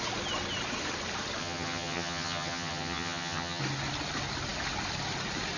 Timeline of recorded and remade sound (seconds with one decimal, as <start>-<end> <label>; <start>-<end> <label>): 0.0-1.4 recorded; 1.4-3.6 remade; 3.6-5.6 recorded